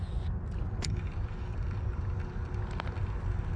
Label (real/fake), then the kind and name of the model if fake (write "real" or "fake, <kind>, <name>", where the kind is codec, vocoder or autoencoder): real